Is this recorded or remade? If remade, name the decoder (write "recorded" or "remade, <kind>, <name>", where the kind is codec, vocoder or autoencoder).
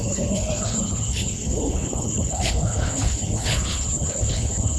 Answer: remade, codec, HILCodec